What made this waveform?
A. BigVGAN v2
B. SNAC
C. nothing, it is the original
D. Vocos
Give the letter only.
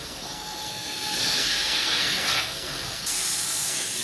B